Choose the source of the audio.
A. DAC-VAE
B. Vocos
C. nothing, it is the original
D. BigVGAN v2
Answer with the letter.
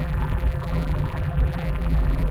D